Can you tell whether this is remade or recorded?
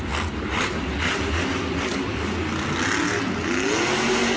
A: recorded